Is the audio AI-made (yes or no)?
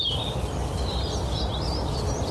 no